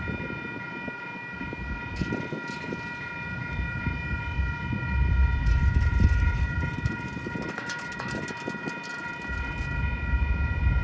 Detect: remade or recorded recorded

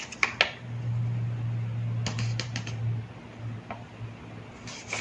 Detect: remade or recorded recorded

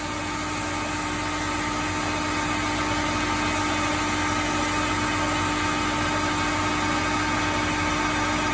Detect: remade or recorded recorded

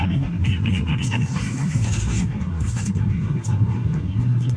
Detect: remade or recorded remade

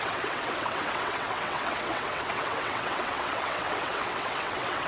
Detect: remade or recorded remade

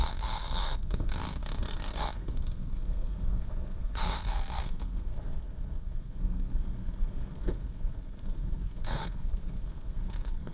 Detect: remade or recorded remade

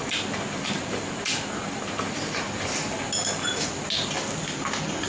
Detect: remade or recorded recorded